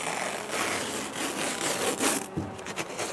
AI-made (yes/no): no